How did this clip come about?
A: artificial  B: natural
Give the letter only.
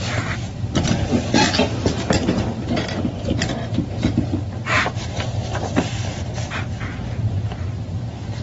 B